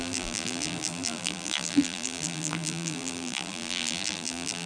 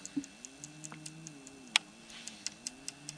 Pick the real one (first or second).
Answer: second